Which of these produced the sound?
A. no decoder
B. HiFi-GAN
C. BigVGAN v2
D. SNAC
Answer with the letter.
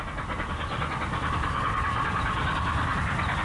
A